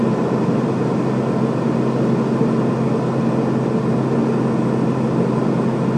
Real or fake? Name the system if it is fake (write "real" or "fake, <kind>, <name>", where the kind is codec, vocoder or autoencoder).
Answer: real